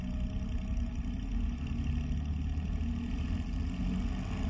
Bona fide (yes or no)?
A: yes